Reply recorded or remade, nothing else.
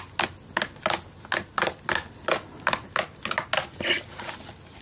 recorded